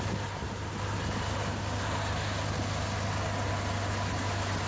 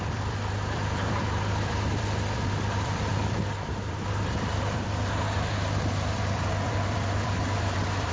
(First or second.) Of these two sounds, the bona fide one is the first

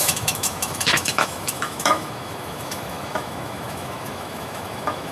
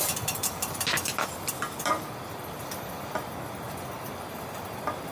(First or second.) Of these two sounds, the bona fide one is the second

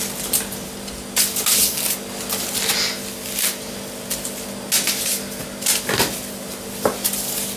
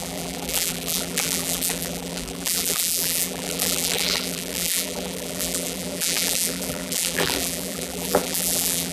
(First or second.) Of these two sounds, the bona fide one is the first